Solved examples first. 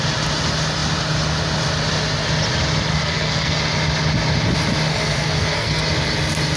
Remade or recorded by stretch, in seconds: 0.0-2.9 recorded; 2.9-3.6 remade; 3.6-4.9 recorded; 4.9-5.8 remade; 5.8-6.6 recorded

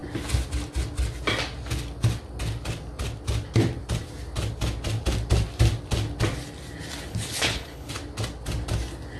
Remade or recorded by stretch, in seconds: 0.0-7.1 recorded; 7.1-7.9 remade; 7.9-9.2 recorded

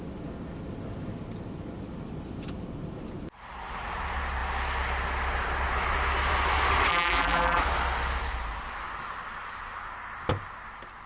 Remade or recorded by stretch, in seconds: 0.0-6.9 recorded; 6.9-7.6 remade; 7.6-11.1 recorded

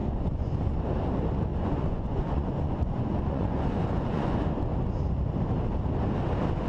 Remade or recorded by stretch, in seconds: 0.0-0.8 remade; 0.8-1.5 recorded; 1.5-4.4 remade; 4.4-6.7 recorded